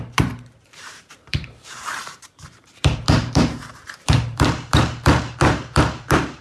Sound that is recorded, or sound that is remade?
remade